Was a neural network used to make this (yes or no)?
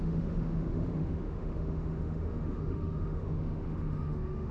yes